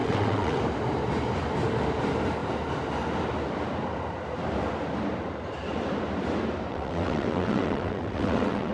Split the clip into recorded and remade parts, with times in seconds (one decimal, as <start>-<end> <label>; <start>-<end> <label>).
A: 0.0-0.6 remade; 0.6-6.7 recorded; 6.7-8.7 remade